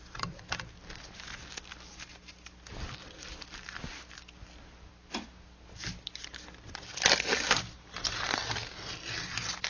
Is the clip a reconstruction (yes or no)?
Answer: no